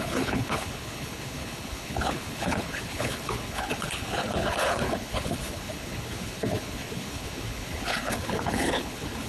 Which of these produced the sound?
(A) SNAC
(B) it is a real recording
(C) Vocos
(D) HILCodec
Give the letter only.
D